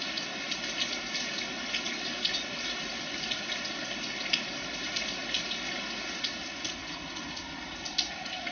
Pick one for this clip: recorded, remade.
recorded